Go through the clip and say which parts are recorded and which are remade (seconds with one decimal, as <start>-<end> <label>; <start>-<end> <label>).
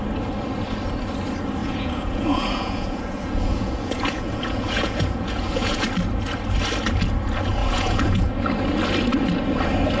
0.0-1.6 recorded; 1.6-5.9 remade; 5.9-7.6 recorded; 7.6-8.4 remade; 8.4-10.0 recorded